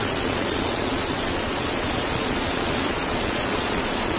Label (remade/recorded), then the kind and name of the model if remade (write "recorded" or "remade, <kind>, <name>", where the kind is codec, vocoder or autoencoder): remade, vocoder, Vocos